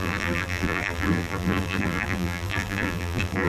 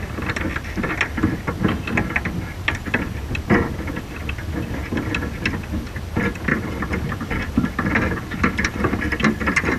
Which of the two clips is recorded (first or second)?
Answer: second